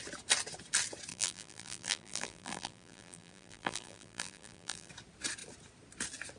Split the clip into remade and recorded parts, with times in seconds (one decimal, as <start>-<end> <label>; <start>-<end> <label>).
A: 0.0-1.1 recorded; 1.1-4.9 remade; 4.9-6.4 recorded